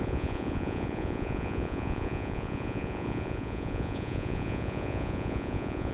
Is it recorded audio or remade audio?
remade